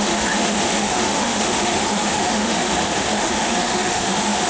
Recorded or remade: remade